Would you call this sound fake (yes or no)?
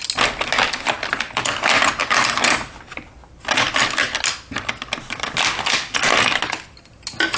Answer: no